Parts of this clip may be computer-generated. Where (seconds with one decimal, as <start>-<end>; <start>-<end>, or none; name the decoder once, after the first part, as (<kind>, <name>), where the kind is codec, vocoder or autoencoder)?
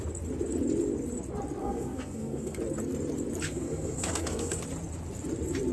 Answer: 1.6-2.6 (codec, SNAC); 3.4-4.6